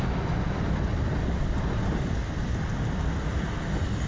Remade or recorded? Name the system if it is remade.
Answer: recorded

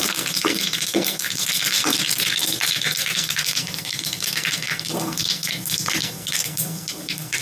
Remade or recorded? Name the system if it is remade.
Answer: remade, codec, SNAC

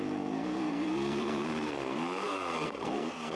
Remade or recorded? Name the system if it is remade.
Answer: remade, codec, SNAC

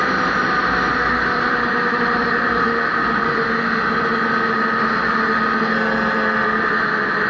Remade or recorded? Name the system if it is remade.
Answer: recorded